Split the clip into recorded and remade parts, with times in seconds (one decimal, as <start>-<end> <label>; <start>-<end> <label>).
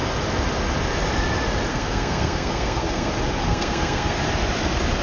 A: 0.0-1.7 recorded; 1.7-3.1 remade; 3.1-3.5 recorded; 3.5-4.2 remade; 4.2-5.0 recorded